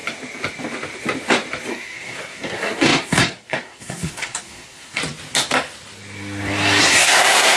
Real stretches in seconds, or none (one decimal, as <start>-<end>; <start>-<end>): 0.0-1.7; 5.0-6.8